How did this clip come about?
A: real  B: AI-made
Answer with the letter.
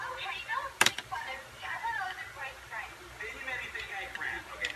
A